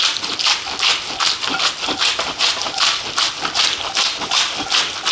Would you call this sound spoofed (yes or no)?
no